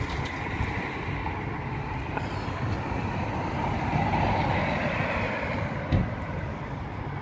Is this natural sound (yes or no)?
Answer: yes